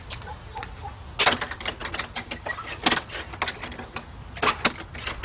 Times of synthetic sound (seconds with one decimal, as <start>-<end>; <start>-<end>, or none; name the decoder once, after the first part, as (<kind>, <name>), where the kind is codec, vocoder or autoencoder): none